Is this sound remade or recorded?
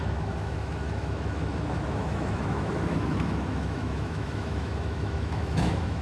remade